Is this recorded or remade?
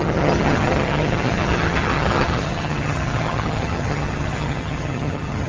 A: remade